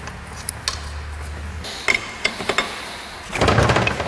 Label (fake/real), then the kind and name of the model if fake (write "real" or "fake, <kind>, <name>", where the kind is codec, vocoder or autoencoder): real